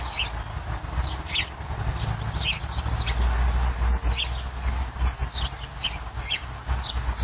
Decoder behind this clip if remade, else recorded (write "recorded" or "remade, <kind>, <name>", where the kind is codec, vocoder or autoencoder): recorded